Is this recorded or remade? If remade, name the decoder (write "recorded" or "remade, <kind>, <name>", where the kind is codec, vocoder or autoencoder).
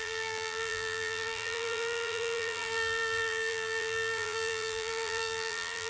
remade, vocoder, BigVGAN v2